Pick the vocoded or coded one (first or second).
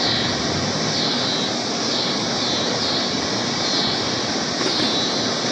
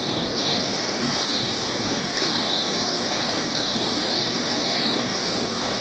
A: second